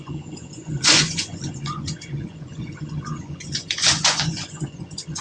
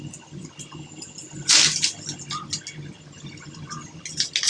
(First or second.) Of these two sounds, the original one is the second